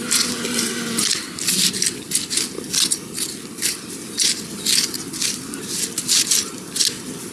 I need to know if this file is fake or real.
real